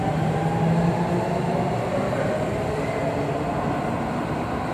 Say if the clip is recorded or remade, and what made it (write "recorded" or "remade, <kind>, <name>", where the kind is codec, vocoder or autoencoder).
recorded